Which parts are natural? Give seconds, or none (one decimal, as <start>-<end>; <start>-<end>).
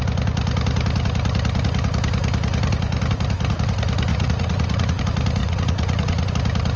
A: 0.0-4.1; 5.0-5.4; 6.3-6.8